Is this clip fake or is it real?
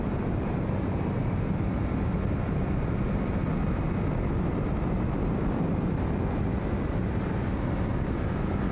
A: real